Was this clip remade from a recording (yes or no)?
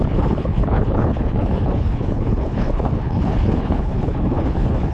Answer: yes